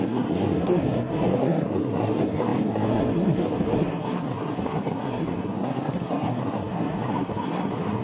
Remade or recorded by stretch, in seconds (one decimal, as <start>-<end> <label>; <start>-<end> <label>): 0.0-8.0 remade

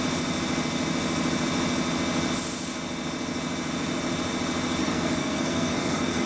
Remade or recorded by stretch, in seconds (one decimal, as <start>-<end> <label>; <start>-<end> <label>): 0.0-4.8 recorded; 4.8-6.3 remade

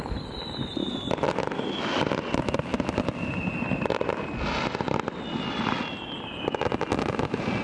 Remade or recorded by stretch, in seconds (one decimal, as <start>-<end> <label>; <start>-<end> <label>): 0.0-7.6 recorded

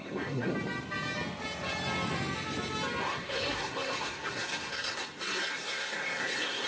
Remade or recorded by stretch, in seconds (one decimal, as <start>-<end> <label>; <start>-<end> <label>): 0.0-0.5 remade; 0.5-3.0 recorded; 3.0-6.7 remade

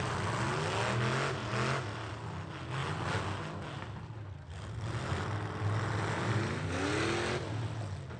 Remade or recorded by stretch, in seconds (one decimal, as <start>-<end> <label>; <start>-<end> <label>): 0.0-8.2 recorded

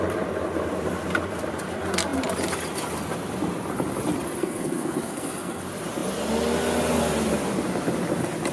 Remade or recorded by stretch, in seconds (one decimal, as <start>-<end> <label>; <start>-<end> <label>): 0.0-4.4 recorded; 4.4-5.6 remade; 5.6-8.5 recorded

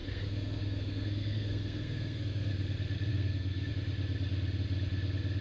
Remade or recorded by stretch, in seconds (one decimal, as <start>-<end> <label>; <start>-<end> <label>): 0.0-2.5 remade; 2.5-3.1 recorded; 3.1-3.7 remade; 3.7-5.4 recorded

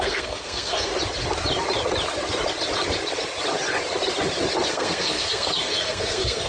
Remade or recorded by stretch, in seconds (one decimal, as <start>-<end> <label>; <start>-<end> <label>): 0.0-0.9 remade; 0.9-4.7 recorded; 4.7-6.5 remade